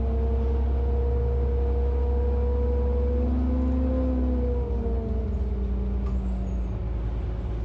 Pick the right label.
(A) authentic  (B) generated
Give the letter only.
A